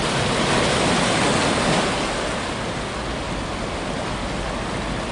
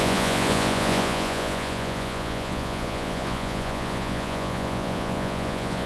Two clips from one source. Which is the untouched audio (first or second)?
first